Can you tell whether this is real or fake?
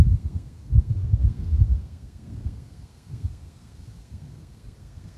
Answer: fake